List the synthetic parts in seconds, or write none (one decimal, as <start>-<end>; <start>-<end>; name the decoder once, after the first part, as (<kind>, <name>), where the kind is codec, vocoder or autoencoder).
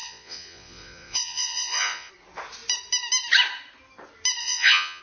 0.0-2.1 (vocoder, Vocos); 4.4-5.0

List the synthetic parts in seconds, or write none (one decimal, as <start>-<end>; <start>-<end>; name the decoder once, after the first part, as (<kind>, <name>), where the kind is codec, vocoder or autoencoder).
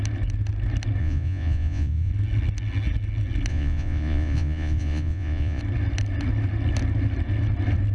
1.0-2.1 (vocoder, Vocos); 3.5-5.6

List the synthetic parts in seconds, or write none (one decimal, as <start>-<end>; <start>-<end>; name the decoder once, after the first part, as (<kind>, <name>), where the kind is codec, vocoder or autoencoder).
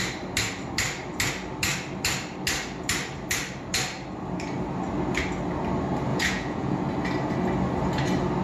6.1-6.8 (vocoder, Vocos)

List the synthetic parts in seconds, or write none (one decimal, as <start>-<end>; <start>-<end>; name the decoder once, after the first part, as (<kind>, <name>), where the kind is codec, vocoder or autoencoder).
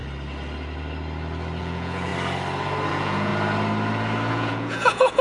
1.6-2.1 (vocoder, Vocos); 2.9-3.3; 4.3-5.2